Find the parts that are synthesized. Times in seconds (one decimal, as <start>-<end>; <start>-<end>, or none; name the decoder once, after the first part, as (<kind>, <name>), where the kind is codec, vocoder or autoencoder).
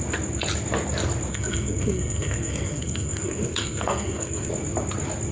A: 1.3-4.5 (codec, SNAC)